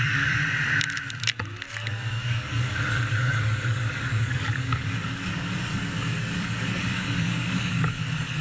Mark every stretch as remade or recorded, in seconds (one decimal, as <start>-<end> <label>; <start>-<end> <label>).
0.0-0.4 remade; 0.4-1.7 recorded; 1.7-8.4 remade